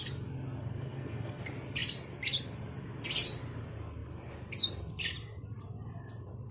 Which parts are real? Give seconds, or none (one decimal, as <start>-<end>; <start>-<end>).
0.0-0.6; 1.4-6.5